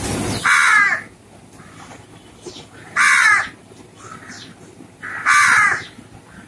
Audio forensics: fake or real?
real